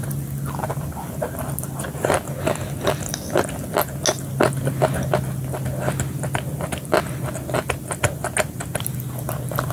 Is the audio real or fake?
real